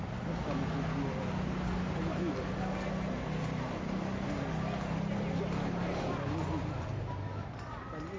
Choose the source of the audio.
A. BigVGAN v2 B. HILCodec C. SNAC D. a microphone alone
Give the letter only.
D